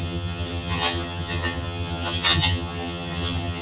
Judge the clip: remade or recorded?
remade